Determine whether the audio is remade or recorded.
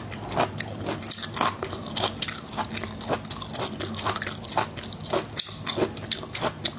recorded